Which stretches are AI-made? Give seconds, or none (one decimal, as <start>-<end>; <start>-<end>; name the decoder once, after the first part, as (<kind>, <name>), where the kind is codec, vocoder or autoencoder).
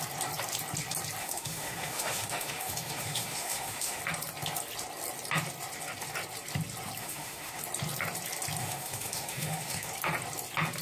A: 1.2-4.0 (autoencoder, DAC-VAE); 7.0-7.6; 8.6-9.9